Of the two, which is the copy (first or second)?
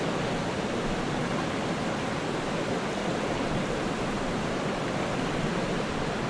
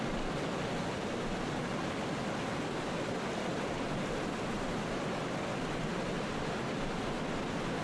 first